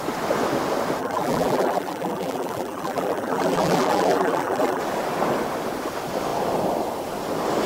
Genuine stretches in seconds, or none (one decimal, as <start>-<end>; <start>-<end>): 0.0-1.0; 4.8-7.7